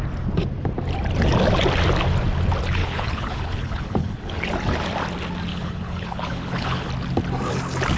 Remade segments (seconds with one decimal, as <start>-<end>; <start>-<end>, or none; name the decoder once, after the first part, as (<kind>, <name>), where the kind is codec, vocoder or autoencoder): 2.8-4.4 (codec, HILCodec); 5.5-6.9

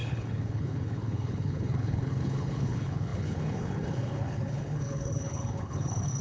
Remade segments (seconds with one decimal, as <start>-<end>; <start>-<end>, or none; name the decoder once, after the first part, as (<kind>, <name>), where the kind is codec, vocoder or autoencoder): 0.0-6.2 (codec, HILCodec)

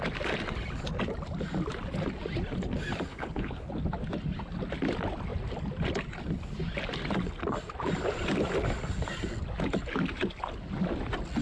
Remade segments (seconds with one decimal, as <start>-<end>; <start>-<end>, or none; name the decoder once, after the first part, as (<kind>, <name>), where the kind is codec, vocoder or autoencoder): 3.1-3.7 (codec, HILCodec)

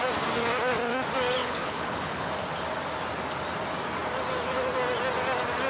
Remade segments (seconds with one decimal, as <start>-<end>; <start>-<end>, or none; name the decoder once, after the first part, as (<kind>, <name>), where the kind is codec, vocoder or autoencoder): 1.4-2.3 (codec, HILCodec)